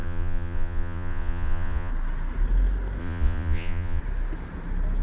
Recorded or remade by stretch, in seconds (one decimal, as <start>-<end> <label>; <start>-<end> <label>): 0.0-1.9 remade; 1.9-3.0 recorded; 3.0-4.0 remade; 4.0-5.0 recorded